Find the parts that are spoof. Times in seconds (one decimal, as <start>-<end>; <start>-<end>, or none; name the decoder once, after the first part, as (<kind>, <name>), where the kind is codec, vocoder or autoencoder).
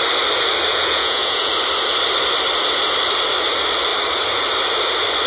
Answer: 0.7-1.5 (vocoder, Vocos)